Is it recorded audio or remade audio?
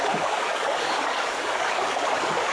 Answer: remade